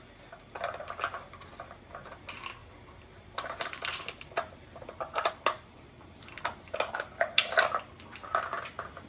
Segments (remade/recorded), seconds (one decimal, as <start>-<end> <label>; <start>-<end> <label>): 0.0-2.6 recorded; 2.6-5.3 remade; 5.3-9.1 recorded